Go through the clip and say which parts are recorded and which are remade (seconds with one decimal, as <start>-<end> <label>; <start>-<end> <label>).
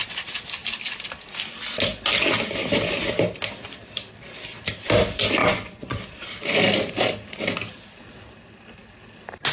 0.0-5.4 recorded; 5.4-6.0 remade; 6.0-9.5 recorded